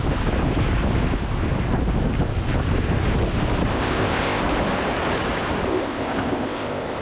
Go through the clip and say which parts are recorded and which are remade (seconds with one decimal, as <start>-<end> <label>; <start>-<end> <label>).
0.0-3.7 recorded; 3.7-4.4 remade; 4.4-5.7 recorded; 5.7-7.0 remade